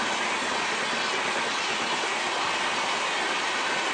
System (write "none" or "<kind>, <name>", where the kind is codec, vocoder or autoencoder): none